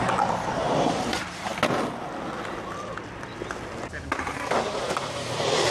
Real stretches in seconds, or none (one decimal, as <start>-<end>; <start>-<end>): 1.5-4.9